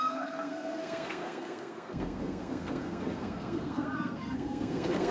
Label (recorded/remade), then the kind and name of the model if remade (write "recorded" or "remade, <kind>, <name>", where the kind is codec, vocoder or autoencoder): remade, codec, SNAC